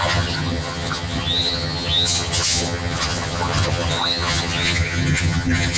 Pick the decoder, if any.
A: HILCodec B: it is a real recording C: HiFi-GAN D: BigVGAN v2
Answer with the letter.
C